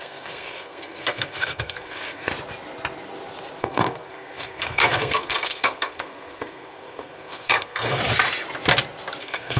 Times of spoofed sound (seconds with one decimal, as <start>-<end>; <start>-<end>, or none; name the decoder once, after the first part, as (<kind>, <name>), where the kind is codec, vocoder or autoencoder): 0.0-2.3 (codec, SNAC); 3.6-8.0; 9.2-9.6